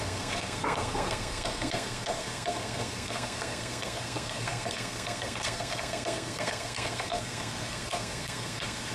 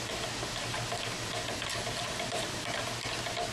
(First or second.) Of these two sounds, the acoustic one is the second